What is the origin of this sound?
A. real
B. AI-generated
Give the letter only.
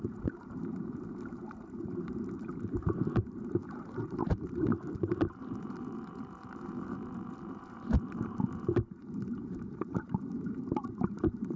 B